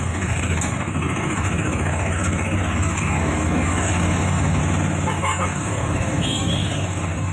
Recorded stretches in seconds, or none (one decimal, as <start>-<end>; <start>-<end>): 4.6-5.1